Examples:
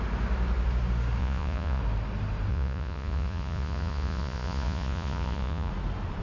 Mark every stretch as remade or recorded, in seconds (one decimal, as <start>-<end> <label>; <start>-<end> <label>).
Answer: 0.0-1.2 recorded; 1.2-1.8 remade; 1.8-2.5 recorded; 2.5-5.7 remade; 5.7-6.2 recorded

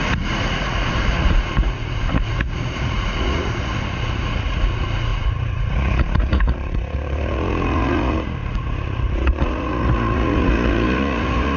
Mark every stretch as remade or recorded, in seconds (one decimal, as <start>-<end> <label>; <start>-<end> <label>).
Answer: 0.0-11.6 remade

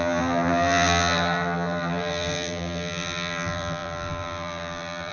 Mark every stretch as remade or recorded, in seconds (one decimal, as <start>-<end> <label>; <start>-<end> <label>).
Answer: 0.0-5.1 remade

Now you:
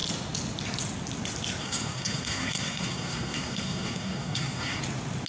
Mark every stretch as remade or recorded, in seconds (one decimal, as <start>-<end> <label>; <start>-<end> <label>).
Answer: 0.0-1.6 recorded; 1.6-4.8 remade; 4.8-5.3 recorded